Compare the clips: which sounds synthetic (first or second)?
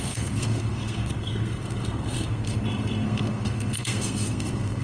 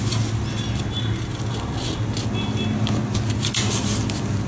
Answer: first